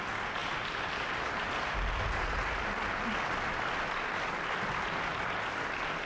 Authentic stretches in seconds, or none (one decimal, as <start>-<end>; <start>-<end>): 0.0-6.1